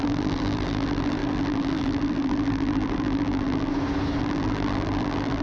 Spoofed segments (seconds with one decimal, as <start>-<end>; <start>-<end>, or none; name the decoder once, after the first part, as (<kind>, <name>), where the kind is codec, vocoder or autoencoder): 0.0-3.7 (vocoder, BigVGAN v2); 4.2-5.4